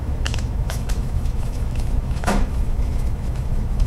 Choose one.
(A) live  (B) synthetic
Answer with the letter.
B